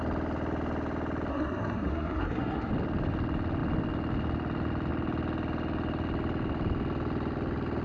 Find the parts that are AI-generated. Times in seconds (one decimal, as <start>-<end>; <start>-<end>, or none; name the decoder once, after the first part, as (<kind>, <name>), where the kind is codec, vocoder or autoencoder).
1.3-2.7 (codec, SNAC)